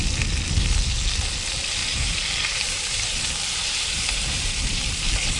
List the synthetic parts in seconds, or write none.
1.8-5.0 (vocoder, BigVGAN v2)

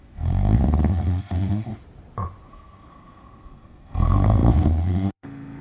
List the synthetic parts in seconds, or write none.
0.0-1.7 (codec, SNAC); 2.5-5.6

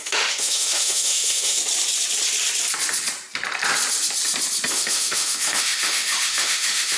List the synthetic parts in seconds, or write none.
0.0-1.6 (autoencoder, DAC-VAE); 4.7-7.0

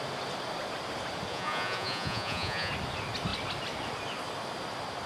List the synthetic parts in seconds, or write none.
1.3-2.7 (vocoder, Vocos)

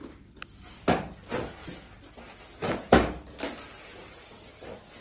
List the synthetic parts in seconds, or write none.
none